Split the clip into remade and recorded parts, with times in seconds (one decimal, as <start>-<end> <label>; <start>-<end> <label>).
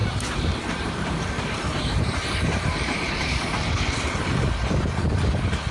0.0-3.4 remade; 3.4-5.7 recorded